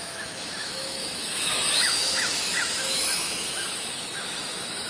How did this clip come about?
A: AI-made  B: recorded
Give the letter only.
A